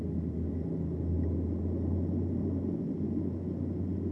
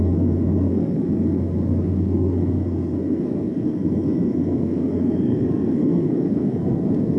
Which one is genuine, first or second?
first